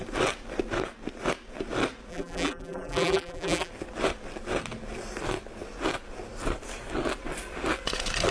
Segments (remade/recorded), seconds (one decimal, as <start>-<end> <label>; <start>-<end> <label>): 0.0-2.1 recorded; 2.1-3.7 remade; 3.7-8.3 recorded